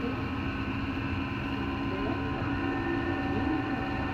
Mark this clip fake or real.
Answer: real